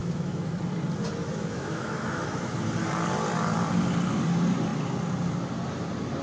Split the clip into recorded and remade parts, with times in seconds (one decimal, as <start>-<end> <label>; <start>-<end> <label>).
0.0-0.5 remade; 0.5-1.2 recorded; 1.2-2.6 remade; 2.6-6.2 recorded